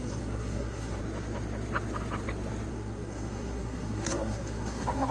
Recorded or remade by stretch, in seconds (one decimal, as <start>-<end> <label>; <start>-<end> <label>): 0.0-1.0 remade; 1.0-2.7 recorded; 2.7-5.1 remade